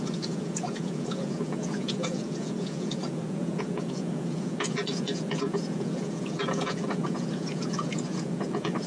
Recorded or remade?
remade